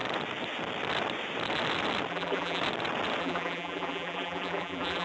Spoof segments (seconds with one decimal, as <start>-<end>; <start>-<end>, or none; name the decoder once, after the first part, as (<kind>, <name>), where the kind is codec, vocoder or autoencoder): 2.1-2.6 (vocoder, BigVGAN v2); 3.2-5.0